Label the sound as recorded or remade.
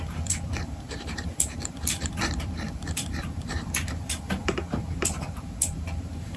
remade